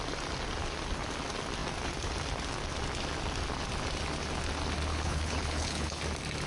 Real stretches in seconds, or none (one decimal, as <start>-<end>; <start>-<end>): 0.0-4.9; 6.0-6.5